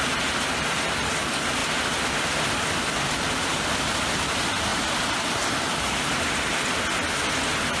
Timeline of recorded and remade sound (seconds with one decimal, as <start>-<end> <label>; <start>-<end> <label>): 0.0-4.7 recorded; 4.7-6.0 remade; 6.0-7.8 recorded